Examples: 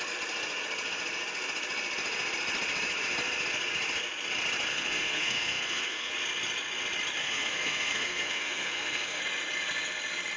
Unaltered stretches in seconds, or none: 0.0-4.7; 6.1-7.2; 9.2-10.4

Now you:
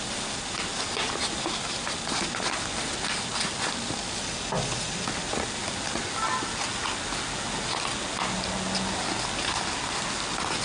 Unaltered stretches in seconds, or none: 0.0-10.6

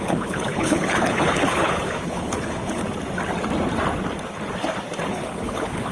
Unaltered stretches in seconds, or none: 2.8-5.1

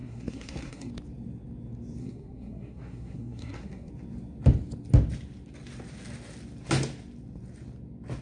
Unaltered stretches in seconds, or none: 0.9-2.0; 3.9-8.2

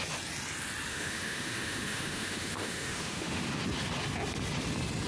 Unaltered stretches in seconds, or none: 0.0-0.9; 3.5-5.1